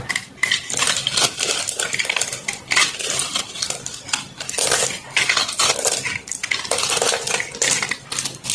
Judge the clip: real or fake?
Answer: real